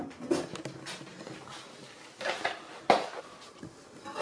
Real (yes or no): yes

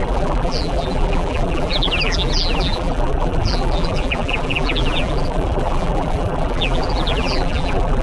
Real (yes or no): no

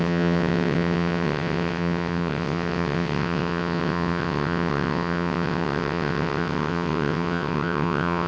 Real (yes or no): no